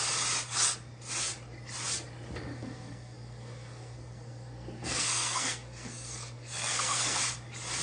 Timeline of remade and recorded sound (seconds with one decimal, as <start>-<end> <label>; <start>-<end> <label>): 0.0-2.5 recorded; 2.5-7.2 remade; 7.2-7.8 recorded